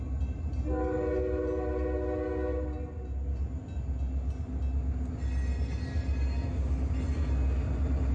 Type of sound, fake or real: real